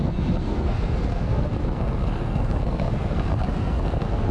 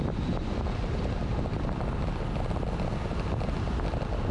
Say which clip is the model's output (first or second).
first